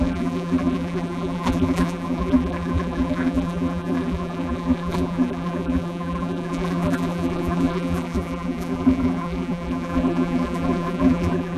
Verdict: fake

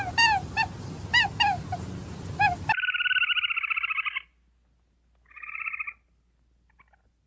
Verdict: real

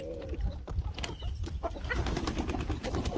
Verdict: fake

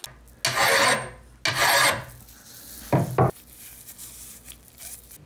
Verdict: real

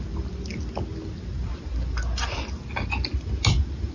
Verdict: real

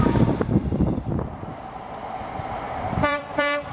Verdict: fake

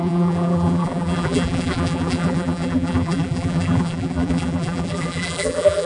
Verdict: fake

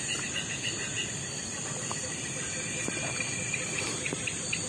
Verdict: fake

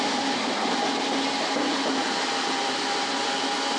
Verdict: real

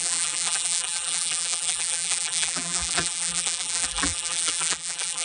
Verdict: fake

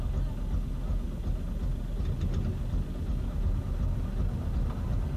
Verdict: real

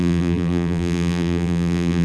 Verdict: fake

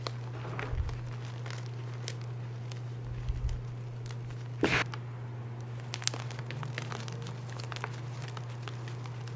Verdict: real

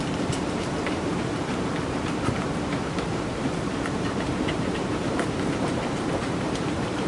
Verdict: fake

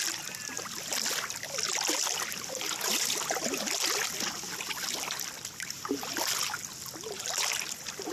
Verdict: real